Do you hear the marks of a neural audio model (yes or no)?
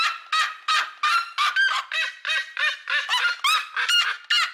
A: no